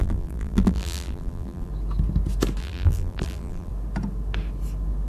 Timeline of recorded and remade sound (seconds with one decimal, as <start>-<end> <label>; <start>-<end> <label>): 0.0-1.7 remade; 1.7-2.6 recorded; 2.6-3.7 remade; 3.7-5.1 recorded